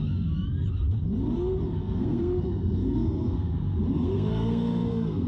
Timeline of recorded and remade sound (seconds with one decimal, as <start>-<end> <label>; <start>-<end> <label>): 0.0-1.8 recorded; 1.8-5.3 remade